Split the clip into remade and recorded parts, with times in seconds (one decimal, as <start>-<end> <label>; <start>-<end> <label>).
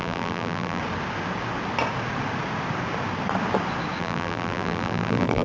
0.0-0.8 remade; 0.8-4.0 recorded; 4.0-5.4 remade